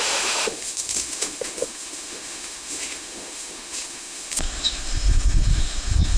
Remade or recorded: remade